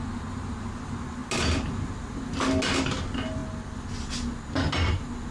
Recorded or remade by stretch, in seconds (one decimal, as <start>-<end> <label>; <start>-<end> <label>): 0.0-5.3 recorded